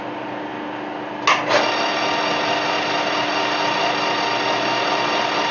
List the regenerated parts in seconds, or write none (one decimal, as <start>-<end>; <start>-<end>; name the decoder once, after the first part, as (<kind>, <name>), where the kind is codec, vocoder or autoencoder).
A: none